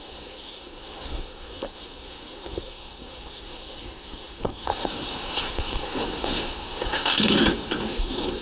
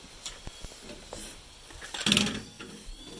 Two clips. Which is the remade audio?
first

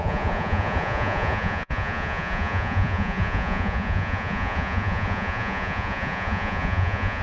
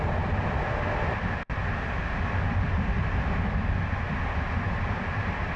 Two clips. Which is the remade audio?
first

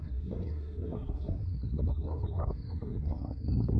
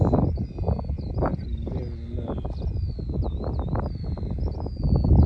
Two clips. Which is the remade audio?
first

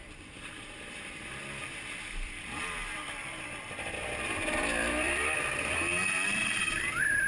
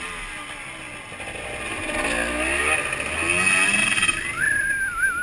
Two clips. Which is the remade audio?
first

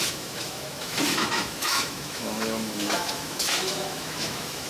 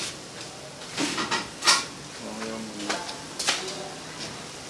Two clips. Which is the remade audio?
first